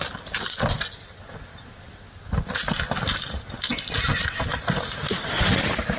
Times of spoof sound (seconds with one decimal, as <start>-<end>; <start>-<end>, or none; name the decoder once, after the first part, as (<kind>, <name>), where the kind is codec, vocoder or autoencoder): none